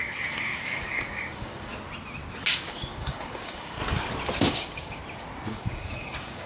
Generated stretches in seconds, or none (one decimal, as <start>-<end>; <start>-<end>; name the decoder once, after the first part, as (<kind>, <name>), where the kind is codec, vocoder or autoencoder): 0.0-1.7 (codec, DAC); 2.5-3.8; 4.4-5.0; 5.5-6.5

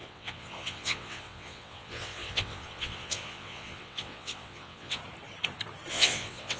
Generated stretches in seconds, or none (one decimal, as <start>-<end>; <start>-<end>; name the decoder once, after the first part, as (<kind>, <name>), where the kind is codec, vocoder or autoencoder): 0.0-5.0 (vocoder, WaveNeXt); 5.9-6.6

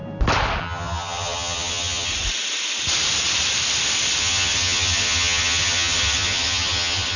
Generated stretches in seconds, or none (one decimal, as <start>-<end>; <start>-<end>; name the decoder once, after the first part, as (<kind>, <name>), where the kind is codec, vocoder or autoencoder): 0.6-2.1 (vocoder, HiFi-GAN); 4.2-7.2

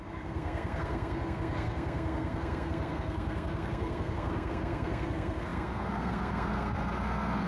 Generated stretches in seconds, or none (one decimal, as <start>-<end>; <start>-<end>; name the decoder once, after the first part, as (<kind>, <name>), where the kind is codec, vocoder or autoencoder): 0.0-7.5 (codec, SNAC)

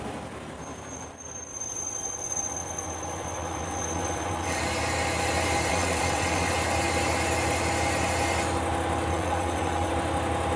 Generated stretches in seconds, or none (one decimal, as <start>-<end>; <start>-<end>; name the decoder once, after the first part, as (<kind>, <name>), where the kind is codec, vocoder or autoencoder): 1.5-4.6 (vocoder, WaveNeXt); 5.7-6.5; 9.1-9.9

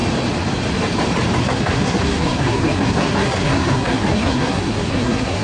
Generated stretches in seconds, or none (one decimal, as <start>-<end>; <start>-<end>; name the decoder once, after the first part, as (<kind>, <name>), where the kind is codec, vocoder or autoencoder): 1.4-5.4 (codec, SNAC)

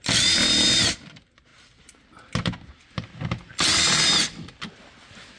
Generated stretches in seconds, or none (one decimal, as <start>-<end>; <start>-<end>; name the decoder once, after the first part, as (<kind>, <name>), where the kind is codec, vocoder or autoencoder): none